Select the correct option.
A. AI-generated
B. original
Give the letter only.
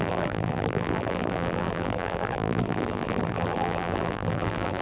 A